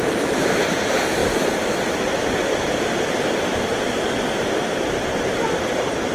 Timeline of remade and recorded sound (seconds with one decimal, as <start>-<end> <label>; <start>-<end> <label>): 0.0-6.1 recorded